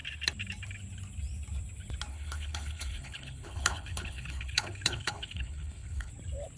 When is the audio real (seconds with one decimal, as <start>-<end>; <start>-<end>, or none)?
0.0-2.1; 6.1-6.6